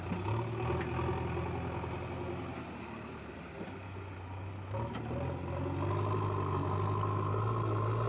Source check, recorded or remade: recorded